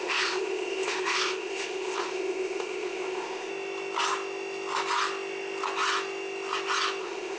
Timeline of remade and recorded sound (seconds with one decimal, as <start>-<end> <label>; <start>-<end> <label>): 0.0-3.5 remade; 3.5-7.0 recorded; 7.0-7.4 remade